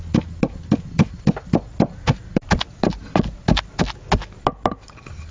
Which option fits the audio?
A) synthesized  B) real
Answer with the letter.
B